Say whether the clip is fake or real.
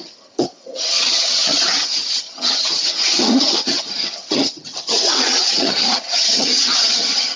fake